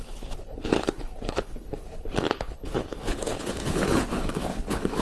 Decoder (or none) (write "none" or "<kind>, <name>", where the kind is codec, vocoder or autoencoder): codec, HILCodec